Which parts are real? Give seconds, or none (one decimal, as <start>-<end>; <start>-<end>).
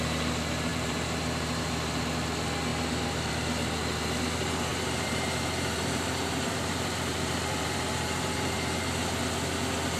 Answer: 0.0-0.7; 2.0-2.7; 3.3-4.7; 8.8-10.0